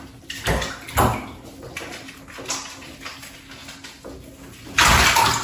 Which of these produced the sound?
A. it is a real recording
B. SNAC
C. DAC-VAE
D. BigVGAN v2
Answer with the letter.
A